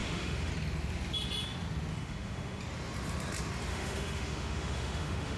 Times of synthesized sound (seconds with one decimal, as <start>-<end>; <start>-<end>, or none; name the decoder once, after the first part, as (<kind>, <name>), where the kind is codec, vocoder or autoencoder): 0.0-0.5 (autoencoder, DAC-VAE); 1.9-2.6; 3.7-5.4